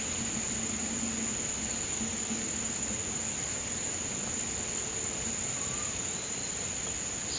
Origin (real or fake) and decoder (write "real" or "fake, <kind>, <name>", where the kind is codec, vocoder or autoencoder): real